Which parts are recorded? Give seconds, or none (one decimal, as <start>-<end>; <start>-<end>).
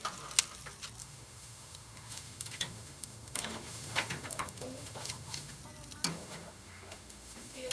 0.0-1.0; 5.6-6.1